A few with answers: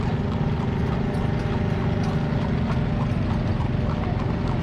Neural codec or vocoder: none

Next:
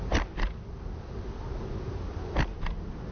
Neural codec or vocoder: none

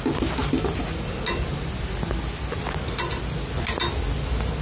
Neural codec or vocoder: none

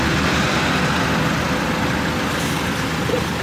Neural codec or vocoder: none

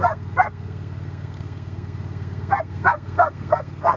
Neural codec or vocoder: codec, SNAC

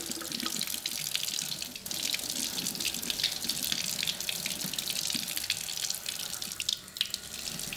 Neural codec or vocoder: none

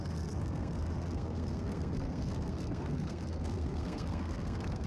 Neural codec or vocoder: codec, SNAC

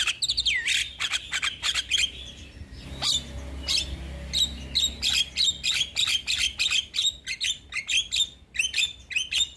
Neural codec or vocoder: none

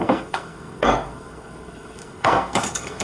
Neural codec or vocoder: codec, SNAC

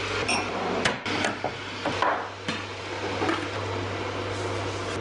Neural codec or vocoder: none